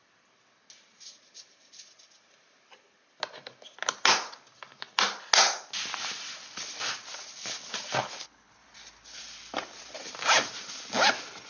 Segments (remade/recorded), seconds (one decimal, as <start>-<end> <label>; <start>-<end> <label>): 0.0-8.0 recorded; 8.0-8.5 remade; 8.5-11.5 recorded